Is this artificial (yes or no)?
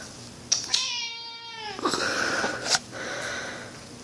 no